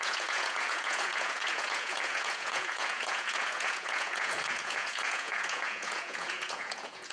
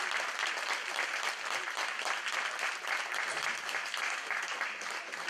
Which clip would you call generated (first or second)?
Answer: first